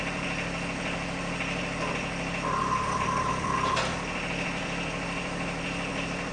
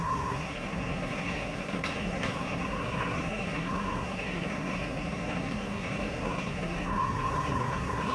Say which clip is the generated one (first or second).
second